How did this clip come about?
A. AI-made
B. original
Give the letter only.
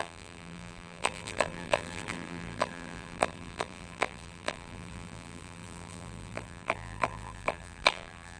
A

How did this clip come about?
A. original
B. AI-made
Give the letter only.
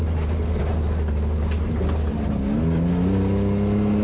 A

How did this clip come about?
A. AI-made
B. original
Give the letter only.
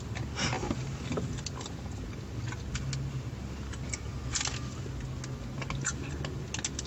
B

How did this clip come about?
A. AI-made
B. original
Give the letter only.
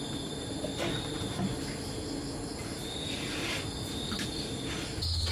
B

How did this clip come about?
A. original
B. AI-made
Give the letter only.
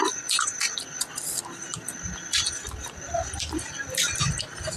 B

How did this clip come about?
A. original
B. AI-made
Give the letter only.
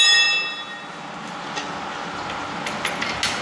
A